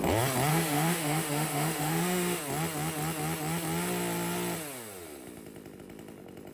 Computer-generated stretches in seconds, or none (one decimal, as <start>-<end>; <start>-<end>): 0.5-2.4